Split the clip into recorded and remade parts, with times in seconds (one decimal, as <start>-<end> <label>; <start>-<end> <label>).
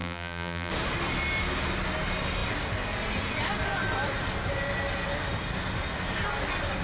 0.0-0.7 remade; 0.7-6.8 recorded